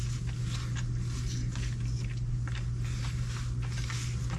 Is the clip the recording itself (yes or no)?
yes